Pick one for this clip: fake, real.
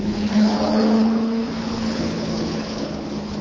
fake